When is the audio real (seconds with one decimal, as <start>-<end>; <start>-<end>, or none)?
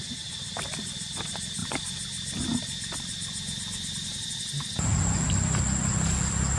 0.0-6.6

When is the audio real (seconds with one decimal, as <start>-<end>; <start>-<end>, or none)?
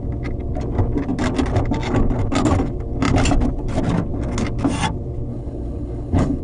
0.0-5.3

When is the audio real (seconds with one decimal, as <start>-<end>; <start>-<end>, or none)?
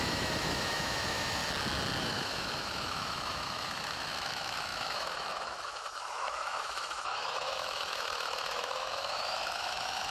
1.4-2.0